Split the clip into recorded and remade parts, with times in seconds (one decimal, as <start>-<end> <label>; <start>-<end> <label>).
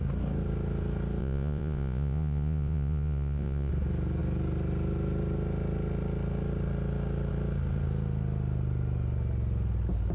0.0-1.2 recorded; 1.2-3.7 remade; 3.7-10.1 recorded